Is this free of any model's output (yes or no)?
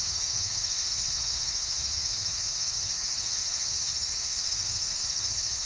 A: no